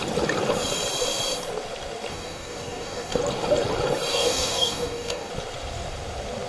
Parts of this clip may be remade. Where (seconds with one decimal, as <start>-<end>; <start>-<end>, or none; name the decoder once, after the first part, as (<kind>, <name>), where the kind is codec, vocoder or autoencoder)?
2.1-3.2 (codec, DAC); 4.1-5.3

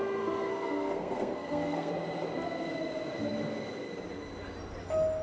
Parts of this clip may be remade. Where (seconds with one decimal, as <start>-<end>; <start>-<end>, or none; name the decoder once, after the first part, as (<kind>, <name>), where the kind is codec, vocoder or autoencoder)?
0.5-1.9 (codec, SNAC)

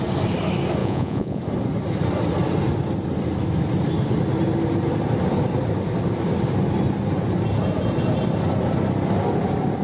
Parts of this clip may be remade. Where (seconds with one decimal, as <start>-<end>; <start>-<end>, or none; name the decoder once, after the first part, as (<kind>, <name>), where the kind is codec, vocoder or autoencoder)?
0.8-1.4 (vocoder, Vocos)

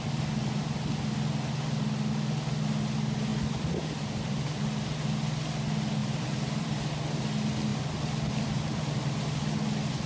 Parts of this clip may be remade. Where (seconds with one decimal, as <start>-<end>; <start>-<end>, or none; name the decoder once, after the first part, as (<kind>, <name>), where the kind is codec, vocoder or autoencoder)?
3.3-4.6 (vocoder, BigVGAN v2); 6.0-7.2; 7.7-9.2

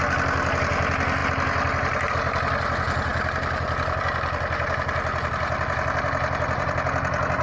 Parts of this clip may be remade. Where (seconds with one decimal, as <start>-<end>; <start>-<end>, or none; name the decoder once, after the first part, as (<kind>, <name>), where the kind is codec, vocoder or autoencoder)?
none

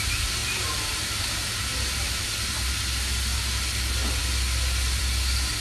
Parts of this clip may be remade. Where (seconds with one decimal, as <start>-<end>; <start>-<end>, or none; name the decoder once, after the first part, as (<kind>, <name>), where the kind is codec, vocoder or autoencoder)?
0.4-1.2 (vocoder, BigVGAN v2); 1.7-2.7